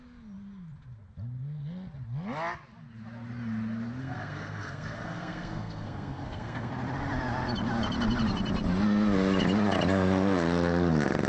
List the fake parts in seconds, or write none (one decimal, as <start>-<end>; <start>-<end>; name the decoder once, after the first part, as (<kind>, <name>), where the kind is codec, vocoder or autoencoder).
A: 4.0-6.7 (codec, SNAC)